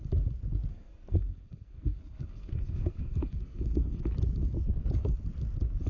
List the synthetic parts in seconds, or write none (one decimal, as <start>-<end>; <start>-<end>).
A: 0.7-4.0